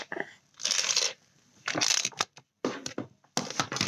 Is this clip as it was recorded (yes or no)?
yes